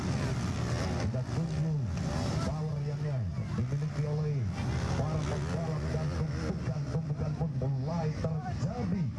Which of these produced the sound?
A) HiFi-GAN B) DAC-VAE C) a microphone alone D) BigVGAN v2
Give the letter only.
C